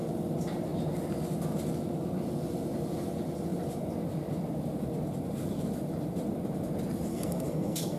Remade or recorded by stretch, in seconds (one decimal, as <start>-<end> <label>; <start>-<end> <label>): 0.0-7.1 recorded; 7.1-8.0 remade